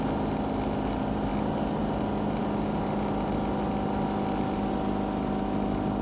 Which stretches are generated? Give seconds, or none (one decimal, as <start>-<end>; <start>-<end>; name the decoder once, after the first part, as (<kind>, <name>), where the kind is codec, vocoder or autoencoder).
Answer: none